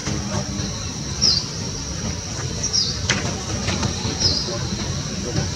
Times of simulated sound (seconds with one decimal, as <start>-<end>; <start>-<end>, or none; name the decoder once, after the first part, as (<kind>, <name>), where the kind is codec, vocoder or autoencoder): none